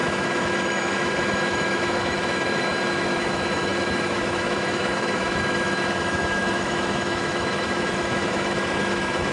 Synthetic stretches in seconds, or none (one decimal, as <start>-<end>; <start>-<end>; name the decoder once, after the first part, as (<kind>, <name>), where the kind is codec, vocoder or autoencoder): 0.0-9.3 (autoencoder, DAC-VAE)